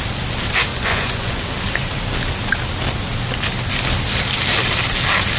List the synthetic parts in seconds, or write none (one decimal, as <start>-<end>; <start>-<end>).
0.7-1.4